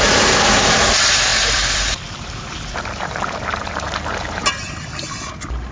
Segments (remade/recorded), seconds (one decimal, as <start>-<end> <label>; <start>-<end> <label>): 0.0-1.3 recorded; 1.3-4.5 remade; 4.5-5.7 recorded